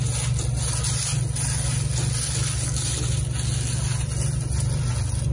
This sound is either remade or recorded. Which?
recorded